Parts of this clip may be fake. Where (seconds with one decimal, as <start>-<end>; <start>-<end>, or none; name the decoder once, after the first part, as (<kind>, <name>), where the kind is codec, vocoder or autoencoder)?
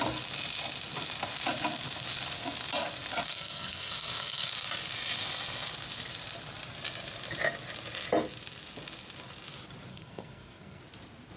3.3-4.5 (codec, SNAC); 9.9-10.8